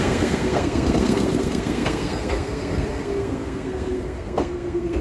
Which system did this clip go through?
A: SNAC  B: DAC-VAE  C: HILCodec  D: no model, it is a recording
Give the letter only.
A